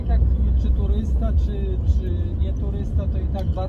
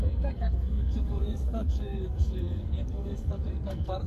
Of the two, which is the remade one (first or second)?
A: second